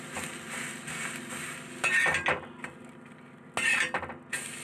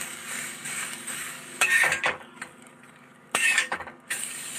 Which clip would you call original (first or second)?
first